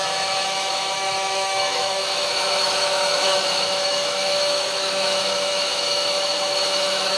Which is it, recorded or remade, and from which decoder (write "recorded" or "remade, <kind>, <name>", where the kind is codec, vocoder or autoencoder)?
remade, autoencoder, DAC-VAE